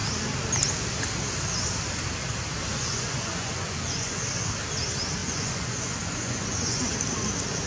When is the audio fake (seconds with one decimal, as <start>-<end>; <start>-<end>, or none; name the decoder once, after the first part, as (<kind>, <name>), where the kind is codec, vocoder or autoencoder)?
2.7-4.3 (vocoder, Vocos); 5.2-6.9